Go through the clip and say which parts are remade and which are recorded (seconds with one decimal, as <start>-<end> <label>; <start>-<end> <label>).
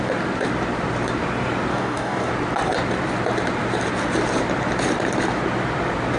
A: 0.0-1.7 recorded; 1.7-2.3 remade; 2.3-6.2 recorded